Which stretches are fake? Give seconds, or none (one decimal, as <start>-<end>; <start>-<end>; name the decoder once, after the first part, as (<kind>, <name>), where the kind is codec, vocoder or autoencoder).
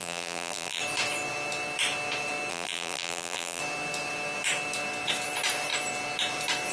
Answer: 0.0-0.8 (vocoder, BigVGAN v2); 2.5-3.6